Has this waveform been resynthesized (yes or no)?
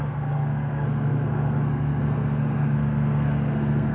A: yes